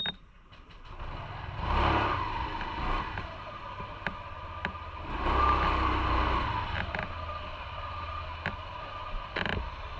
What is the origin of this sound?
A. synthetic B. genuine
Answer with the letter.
B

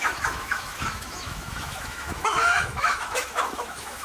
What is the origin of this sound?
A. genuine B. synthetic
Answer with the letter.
B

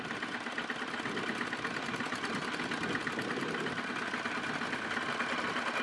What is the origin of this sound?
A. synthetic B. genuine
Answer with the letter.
B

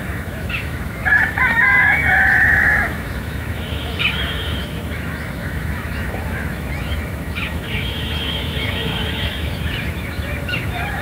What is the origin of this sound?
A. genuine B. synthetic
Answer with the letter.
B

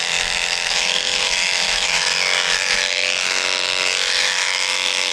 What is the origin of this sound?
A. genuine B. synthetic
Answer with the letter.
B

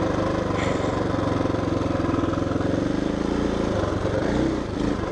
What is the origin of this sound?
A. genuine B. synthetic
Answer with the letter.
A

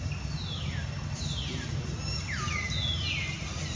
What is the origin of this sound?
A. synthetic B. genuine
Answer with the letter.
B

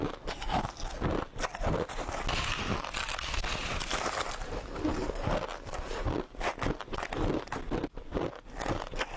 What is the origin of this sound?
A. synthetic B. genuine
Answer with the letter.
B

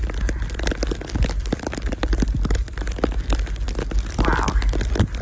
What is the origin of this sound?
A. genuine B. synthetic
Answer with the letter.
A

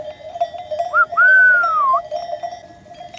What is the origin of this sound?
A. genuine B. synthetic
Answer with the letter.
A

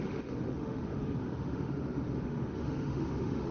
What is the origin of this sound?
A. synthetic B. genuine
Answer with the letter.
A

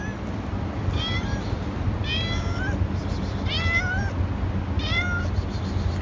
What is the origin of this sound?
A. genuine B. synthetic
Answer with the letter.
A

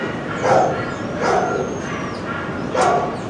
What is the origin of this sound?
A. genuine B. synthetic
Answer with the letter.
A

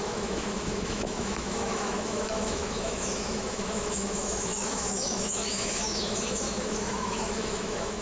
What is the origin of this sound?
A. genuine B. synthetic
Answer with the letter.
B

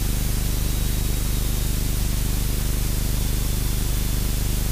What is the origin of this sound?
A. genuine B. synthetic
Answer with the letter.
A